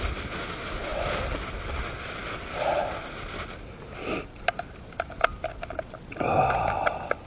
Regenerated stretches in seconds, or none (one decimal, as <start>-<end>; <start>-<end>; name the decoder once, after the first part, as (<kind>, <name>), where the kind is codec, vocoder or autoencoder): none